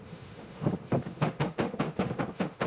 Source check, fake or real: fake